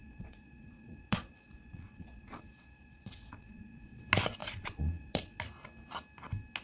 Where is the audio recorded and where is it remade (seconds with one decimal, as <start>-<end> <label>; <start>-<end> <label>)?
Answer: 0.0-4.0 remade; 4.0-4.4 recorded; 4.4-5.4 remade; 5.4-6.6 recorded